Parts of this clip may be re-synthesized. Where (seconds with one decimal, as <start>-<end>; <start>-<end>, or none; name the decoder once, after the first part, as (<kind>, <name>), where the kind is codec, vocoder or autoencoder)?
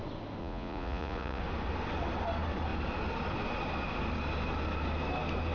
0.4-1.4 (vocoder, Vocos)